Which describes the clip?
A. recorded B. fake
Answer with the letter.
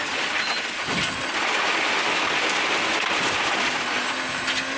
A